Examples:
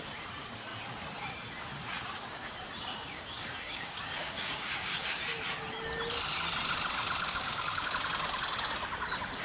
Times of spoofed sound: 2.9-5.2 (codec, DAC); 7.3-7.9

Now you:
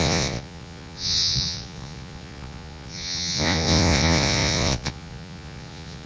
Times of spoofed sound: 0.0-6.1 (vocoder, Vocos)

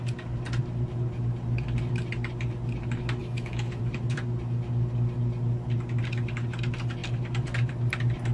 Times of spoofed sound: 3.2-3.8 (autoencoder, DAC-VAE)

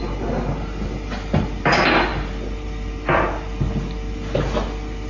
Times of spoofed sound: none

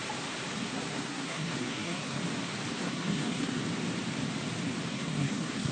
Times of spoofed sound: 0.6-2.2 (codec, SNAC); 2.7-3.6; 4.9-5.7

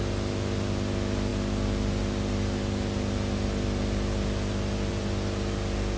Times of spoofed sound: none

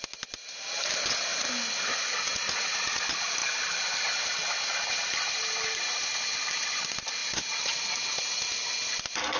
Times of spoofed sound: none

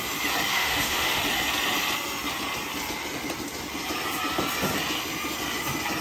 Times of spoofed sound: 0.5-1.2 (autoencoder, DAC-VAE)